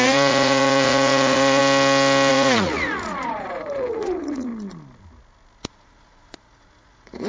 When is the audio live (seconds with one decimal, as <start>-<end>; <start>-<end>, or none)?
1.6-2.3; 4.5-5.6